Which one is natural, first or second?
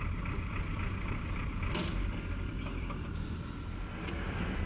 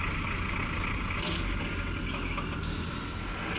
second